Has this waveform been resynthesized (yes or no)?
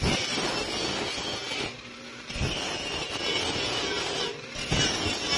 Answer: no